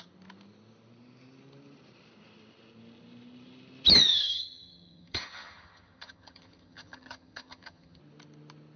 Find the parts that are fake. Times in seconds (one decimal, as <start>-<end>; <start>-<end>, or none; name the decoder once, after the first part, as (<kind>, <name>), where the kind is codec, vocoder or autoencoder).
4.1-8.0 (vocoder, HiFi-GAN)